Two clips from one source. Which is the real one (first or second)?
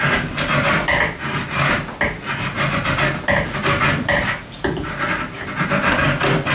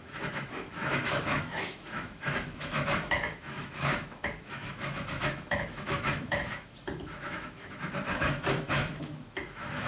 first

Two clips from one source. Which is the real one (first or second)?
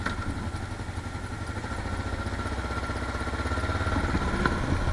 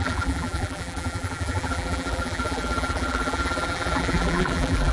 first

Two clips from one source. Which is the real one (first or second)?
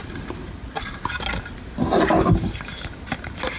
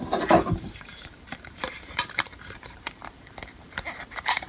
first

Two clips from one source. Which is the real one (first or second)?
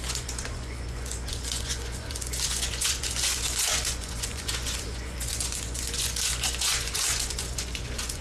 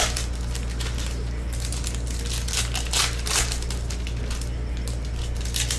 second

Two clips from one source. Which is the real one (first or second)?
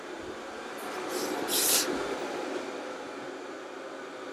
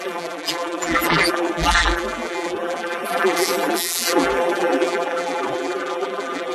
first